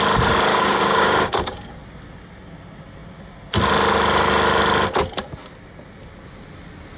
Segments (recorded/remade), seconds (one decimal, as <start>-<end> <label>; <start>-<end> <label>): 0.0-0.5 recorded; 0.5-1.8 remade; 1.8-7.0 recorded